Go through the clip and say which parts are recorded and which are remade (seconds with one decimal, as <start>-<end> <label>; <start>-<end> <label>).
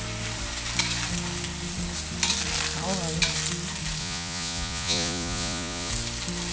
0.0-4.0 recorded; 4.0-5.9 remade; 5.9-6.5 recorded